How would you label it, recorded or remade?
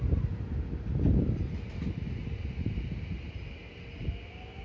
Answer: recorded